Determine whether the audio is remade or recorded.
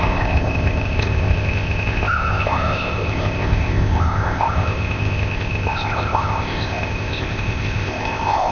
remade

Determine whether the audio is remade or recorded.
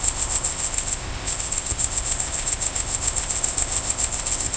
remade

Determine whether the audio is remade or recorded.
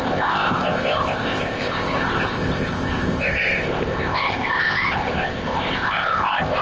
remade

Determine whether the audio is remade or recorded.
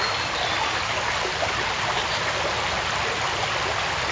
recorded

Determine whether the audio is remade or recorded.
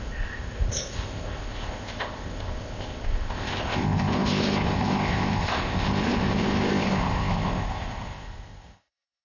remade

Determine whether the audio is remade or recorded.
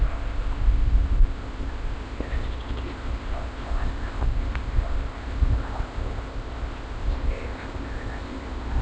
remade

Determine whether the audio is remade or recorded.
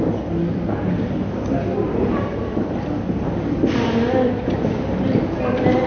recorded